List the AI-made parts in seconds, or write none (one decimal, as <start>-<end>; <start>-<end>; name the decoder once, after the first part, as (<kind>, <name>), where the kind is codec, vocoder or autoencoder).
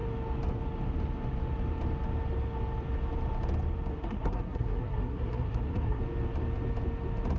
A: 3.9-6.0 (codec, SNAC)